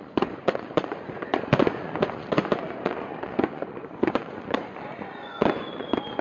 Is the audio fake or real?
fake